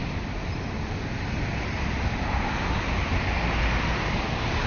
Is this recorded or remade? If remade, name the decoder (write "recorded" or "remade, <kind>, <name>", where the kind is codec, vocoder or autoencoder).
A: recorded